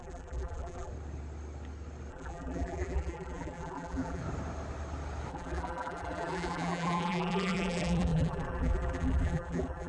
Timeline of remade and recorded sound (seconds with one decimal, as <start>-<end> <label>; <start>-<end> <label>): 0.0-0.9 remade; 0.9-2.1 recorded; 2.1-4.2 remade; 4.2-5.3 recorded; 5.3-9.9 remade